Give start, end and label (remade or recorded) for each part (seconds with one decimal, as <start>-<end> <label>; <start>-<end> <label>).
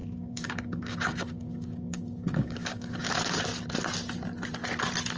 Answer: 0.0-3.1 remade; 3.1-5.2 recorded